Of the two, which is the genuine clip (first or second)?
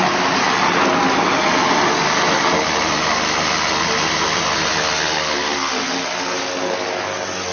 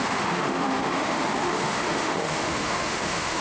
first